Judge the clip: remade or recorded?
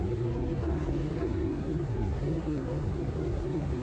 remade